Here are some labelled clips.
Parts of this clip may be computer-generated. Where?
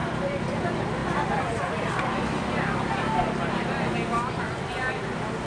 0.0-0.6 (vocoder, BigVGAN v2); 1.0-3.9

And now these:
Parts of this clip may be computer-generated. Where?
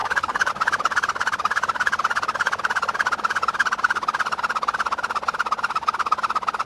0.0-0.5 (codec, DAC)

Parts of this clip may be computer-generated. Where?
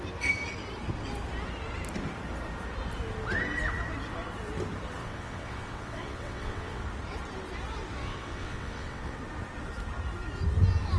5.0-6.8 (vocoder, WaveNeXt); 8.0-9.2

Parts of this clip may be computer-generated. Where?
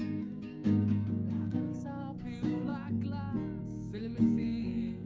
0.0-2.7 (codec, DAC); 3.6-5.1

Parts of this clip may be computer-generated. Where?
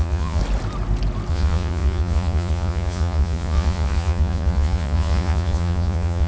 0.0-0.4 (vocoder, Vocos); 1.3-6.3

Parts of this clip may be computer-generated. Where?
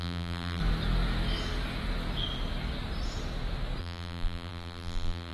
0.0-0.6 (vocoder, BigVGAN v2); 3.8-5.3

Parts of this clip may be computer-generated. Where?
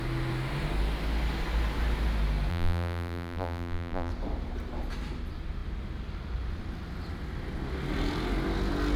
2.5-4.1 (vocoder, BigVGAN v2)